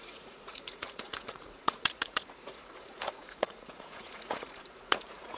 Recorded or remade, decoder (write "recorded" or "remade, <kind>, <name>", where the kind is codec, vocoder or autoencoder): remade, vocoder, Vocos